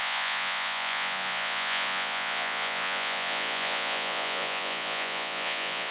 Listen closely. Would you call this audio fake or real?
fake